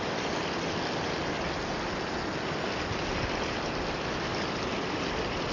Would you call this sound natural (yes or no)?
yes